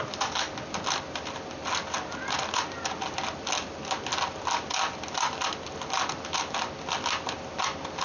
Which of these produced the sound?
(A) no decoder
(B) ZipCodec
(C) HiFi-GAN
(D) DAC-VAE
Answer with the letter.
A